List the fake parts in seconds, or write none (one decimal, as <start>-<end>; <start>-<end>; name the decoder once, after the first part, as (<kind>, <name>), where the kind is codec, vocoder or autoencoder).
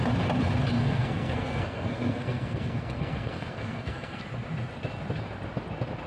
0.8-4.2 (codec, SNAC)